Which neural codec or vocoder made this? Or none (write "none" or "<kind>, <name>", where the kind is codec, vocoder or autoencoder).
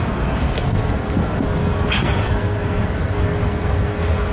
codec, SNAC